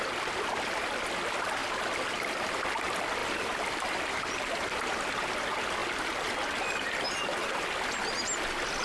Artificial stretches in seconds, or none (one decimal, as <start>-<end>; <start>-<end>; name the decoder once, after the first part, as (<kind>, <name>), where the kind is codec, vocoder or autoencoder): 1.6-2.5 (vocoder, BigVGAN v2); 3.2-4.2

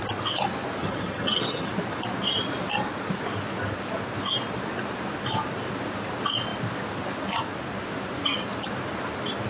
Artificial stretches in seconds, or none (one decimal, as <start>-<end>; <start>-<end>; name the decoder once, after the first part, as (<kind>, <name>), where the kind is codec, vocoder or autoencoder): 0.8-1.7 (vocoder, HiFi-GAN)

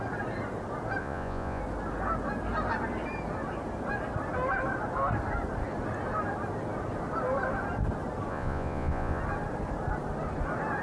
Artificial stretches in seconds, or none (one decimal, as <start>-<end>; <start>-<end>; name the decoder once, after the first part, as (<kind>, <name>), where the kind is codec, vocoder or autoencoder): 1.0-1.6 (vocoder, Vocos); 8.3-9.2